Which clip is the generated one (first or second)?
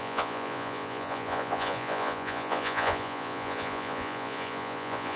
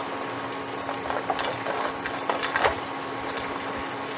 first